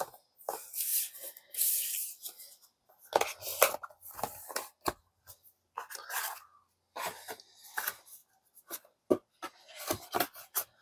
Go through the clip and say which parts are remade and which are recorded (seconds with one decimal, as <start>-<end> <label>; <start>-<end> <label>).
0.0-10.8 recorded